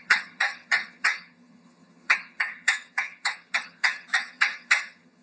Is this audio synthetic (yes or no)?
yes